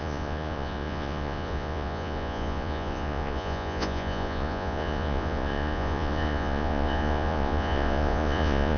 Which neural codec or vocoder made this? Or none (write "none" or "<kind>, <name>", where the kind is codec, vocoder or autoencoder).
vocoder, Vocos